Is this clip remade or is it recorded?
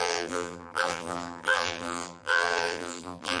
remade